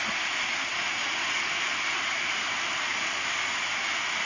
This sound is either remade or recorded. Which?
recorded